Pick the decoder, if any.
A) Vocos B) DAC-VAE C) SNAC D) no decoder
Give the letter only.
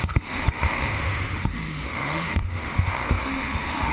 B